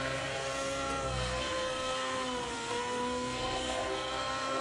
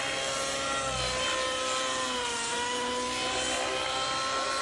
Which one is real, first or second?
second